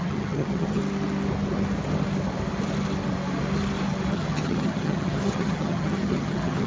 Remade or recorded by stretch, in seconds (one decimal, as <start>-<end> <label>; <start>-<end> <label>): 0.0-0.8 remade; 0.8-4.1 recorded; 4.1-6.7 remade